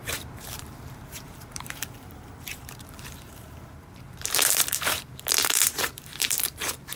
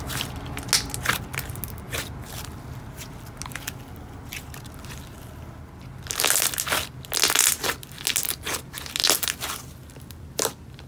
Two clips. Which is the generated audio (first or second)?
first